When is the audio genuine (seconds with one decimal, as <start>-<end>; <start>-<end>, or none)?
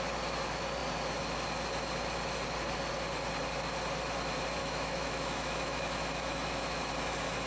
0.0-4.6; 6.9-7.5